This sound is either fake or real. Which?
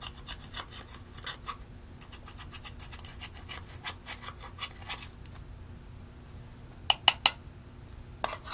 real